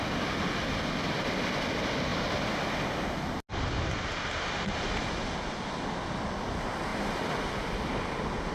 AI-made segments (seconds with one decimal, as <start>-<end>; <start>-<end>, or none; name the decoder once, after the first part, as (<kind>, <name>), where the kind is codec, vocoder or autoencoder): none